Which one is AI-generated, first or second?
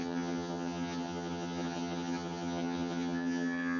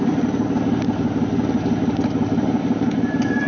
first